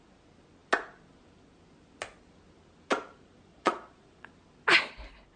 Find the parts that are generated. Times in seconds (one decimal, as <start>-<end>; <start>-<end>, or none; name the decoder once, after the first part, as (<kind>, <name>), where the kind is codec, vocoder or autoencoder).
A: 3.5-4.3 (vocoder, Vocos)